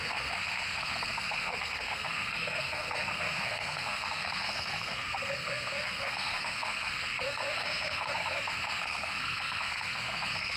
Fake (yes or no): yes